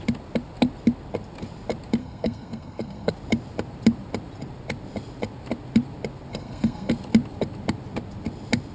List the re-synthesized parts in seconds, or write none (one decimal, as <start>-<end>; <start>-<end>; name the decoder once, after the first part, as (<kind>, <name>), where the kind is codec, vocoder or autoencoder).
2.0-3.1 (codec, SNAC); 6.3-6.9